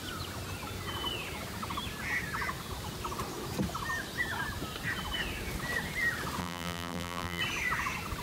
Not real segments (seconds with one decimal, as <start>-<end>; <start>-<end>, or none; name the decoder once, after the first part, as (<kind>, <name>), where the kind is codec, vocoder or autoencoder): 6.4-7.4 (vocoder, BigVGAN v2)